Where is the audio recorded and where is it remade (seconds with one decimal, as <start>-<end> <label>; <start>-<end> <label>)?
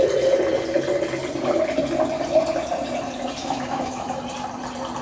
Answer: 0.0-3.4 recorded; 3.4-4.2 remade; 4.2-5.0 recorded